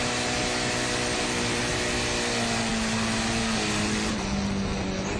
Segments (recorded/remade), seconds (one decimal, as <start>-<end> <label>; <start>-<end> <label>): 0.0-5.2 recorded